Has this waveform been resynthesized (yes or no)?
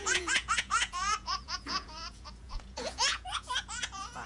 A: yes